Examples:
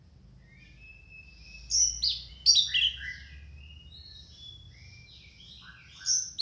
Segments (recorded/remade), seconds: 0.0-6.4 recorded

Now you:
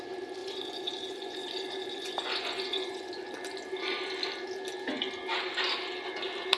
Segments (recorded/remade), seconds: 0.0-0.4 recorded; 0.4-3.1 remade; 3.1-6.6 recorded